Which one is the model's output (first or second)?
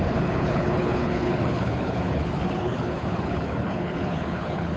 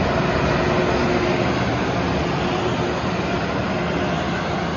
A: first